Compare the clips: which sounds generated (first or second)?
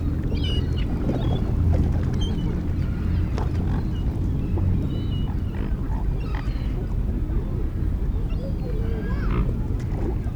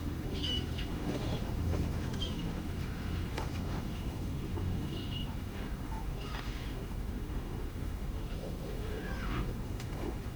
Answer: second